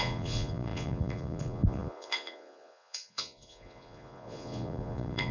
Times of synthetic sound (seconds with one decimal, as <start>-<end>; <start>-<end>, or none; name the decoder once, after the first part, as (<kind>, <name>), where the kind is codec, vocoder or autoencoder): 0.0-5.3 (vocoder, Vocos)